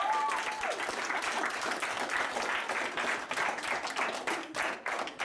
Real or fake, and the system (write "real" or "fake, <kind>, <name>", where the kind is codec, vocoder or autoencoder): real